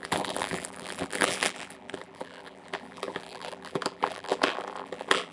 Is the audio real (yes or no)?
no